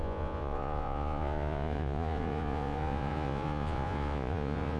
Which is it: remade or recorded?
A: remade